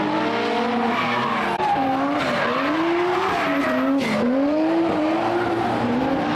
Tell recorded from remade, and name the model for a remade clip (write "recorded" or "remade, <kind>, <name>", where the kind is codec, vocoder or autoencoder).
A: recorded